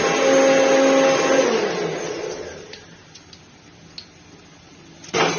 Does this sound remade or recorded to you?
recorded